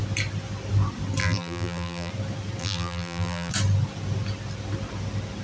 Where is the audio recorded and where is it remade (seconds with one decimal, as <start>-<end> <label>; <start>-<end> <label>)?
0.0-1.2 recorded; 1.2-2.1 remade; 2.1-2.6 recorded; 2.6-3.5 remade; 3.5-5.4 recorded